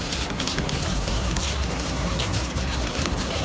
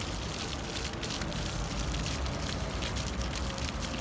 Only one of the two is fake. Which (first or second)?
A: first